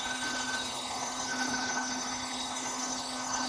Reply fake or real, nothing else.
fake